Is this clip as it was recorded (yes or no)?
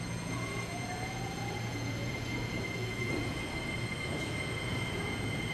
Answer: no